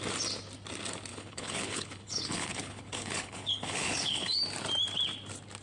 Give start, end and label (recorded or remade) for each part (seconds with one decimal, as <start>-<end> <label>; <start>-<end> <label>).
0.0-1.1 recorded; 1.1-4.4 remade; 4.4-5.6 recorded